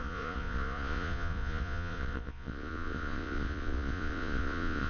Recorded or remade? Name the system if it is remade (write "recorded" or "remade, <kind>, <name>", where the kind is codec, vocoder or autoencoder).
remade, vocoder, Vocos